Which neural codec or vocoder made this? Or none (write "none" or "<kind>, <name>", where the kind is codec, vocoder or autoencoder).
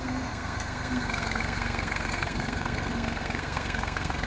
codec, SNAC